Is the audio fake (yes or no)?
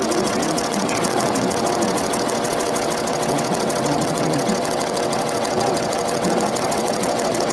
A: yes